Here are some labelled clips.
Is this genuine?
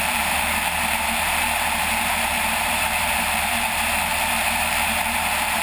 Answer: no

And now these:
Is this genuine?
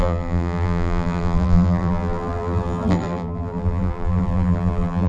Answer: no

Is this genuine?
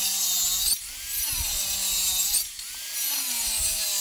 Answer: yes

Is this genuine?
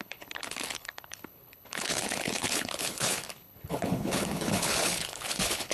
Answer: no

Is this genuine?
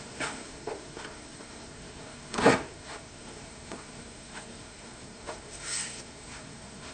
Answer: no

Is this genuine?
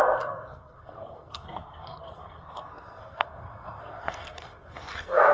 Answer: no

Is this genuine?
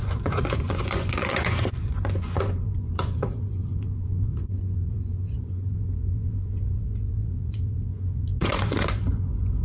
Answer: no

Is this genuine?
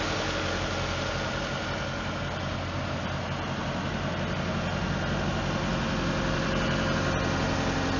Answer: yes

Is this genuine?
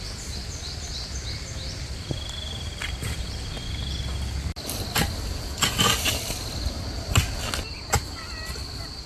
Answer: yes